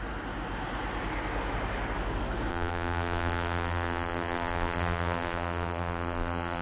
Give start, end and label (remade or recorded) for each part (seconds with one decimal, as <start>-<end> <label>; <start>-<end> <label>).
0.0-2.5 recorded; 2.5-6.6 remade